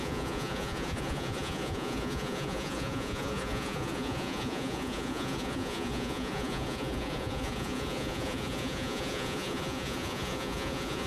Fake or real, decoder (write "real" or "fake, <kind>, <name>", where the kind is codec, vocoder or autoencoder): fake, vocoder, Vocos